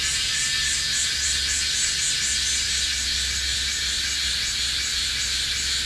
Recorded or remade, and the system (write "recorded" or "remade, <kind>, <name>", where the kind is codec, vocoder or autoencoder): recorded